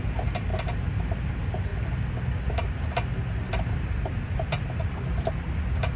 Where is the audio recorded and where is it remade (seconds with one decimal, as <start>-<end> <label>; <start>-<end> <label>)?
0.0-6.0 recorded